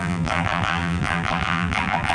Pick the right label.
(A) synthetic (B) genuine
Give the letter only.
A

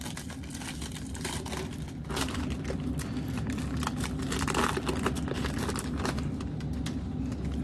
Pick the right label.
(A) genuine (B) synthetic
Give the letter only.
A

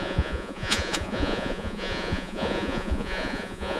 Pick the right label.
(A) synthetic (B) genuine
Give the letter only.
A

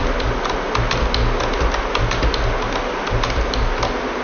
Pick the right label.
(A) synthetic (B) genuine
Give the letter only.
B